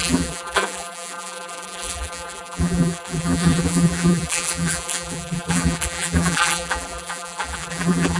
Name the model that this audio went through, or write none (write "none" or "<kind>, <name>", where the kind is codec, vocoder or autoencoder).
vocoder, BigVGAN v2